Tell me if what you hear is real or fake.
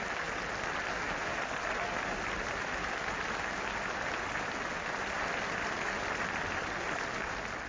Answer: real